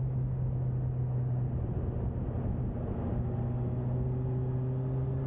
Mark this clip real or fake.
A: real